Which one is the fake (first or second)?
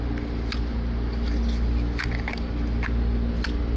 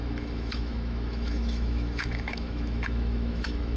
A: second